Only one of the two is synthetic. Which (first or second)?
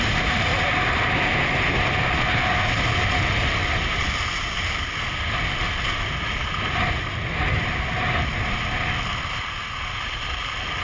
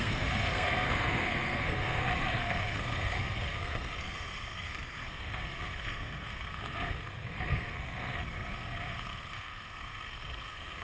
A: second